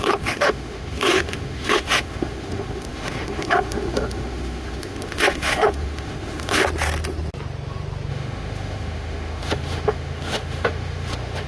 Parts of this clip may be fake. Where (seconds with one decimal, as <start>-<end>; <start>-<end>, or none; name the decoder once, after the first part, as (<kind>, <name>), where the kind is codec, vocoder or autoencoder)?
0.0-6.6 (autoencoder, DAC-VAE); 8.1-11.5